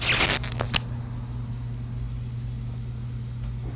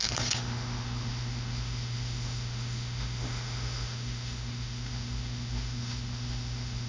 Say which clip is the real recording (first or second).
first